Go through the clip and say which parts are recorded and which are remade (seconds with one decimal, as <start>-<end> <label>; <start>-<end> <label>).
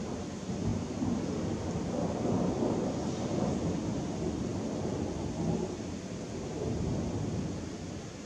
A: 0.0-0.7 recorded; 0.7-1.2 remade; 1.2-8.3 recorded